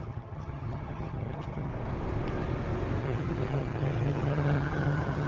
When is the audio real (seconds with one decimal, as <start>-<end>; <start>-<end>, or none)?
1.7-3.0